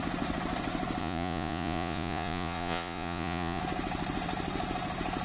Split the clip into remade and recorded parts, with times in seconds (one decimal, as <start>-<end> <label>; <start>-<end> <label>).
0.0-1.0 recorded; 1.0-3.6 remade; 3.6-5.2 recorded